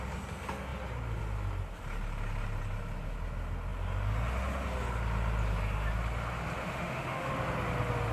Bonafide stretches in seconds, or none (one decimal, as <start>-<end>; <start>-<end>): 0.0-6.6; 7.3-8.1